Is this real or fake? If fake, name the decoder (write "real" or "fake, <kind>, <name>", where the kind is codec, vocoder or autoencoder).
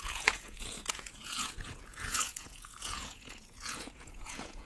fake, vocoder, Vocos